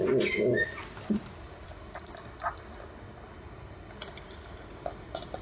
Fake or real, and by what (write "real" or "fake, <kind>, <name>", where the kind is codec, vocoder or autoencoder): real